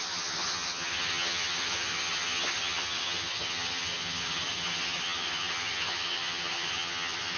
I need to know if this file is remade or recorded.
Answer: remade